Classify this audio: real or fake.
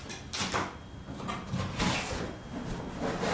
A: real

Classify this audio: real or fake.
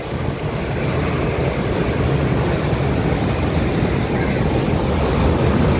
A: real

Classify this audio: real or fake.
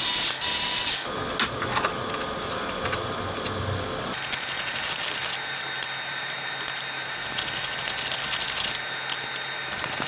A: real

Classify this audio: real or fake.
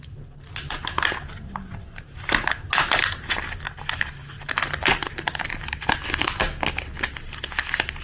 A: real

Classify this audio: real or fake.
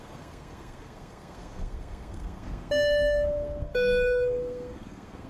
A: fake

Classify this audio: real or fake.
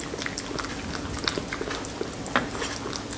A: real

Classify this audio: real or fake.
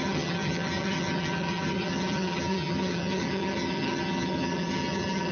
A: fake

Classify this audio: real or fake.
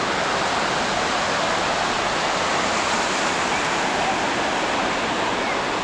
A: real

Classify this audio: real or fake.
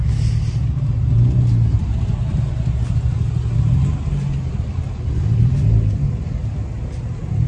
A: real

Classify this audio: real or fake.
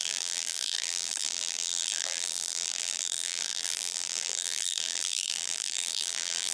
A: fake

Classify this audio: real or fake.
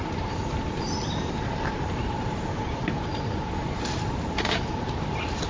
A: fake